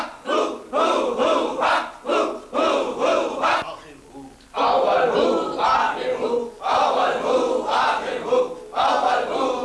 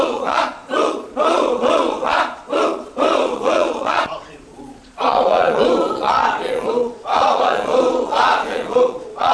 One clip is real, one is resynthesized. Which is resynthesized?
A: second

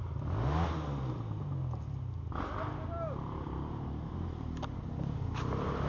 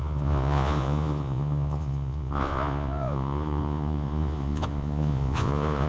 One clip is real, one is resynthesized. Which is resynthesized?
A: second